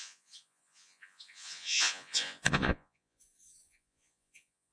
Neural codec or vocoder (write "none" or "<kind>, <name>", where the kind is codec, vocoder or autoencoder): vocoder, Vocos